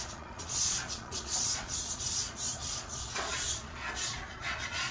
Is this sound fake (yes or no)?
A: yes